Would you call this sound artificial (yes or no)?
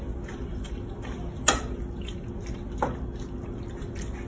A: no